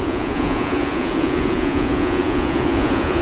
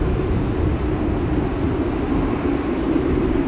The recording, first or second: second